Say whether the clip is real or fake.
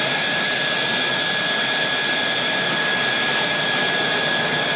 real